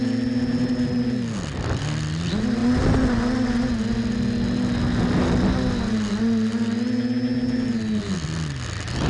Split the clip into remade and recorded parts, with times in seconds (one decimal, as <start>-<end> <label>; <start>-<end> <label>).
0.0-9.1 recorded